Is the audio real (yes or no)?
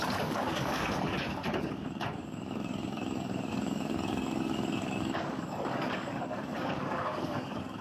no